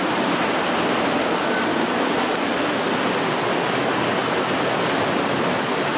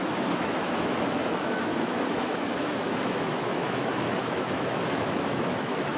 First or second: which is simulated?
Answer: second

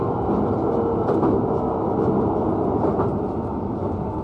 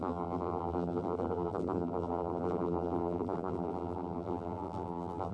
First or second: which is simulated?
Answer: second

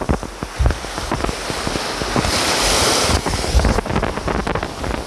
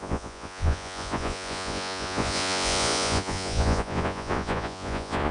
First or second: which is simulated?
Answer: second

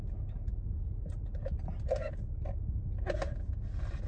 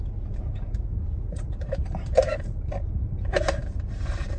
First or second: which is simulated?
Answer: second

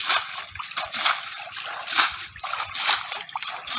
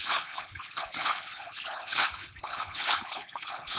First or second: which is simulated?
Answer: second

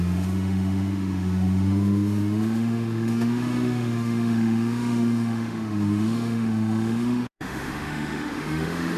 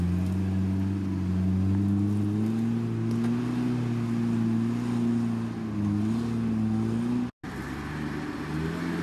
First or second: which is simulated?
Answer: first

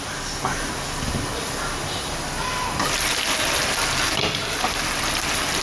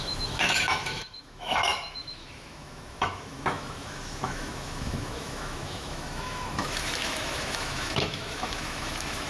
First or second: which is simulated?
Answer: second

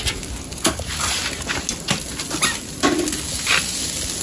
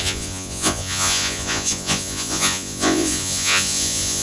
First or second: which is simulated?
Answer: second